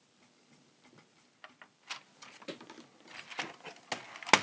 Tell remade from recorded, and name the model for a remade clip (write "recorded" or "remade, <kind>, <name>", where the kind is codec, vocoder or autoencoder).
recorded